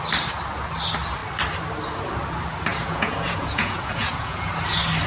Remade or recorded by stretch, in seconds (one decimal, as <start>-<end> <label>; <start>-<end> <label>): 0.0-2.7 recorded; 2.7-4.5 remade; 4.5-5.1 recorded